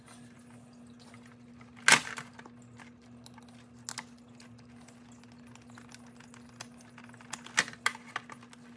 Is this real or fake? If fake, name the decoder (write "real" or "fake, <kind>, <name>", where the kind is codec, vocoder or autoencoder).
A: real